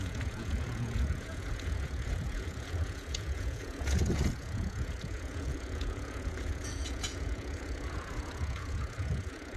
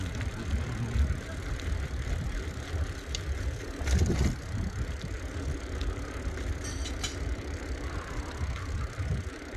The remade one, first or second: first